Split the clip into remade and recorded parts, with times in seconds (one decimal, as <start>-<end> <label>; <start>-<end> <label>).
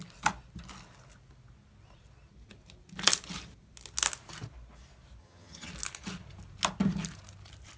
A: 0.0-5.2 recorded; 5.2-5.7 remade; 5.7-7.8 recorded